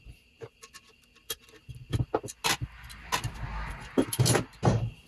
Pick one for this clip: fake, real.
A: real